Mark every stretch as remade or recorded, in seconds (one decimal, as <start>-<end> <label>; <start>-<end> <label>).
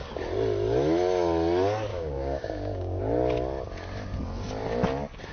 0.0-1.9 recorded; 1.9-3.0 remade; 3.0-5.3 recorded